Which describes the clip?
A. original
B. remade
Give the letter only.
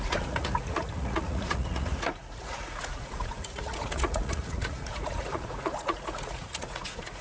B